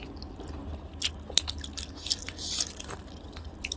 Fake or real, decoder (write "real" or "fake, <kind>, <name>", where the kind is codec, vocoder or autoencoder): real